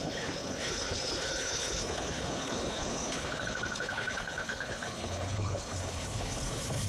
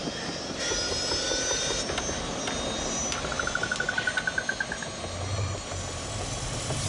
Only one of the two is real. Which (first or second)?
second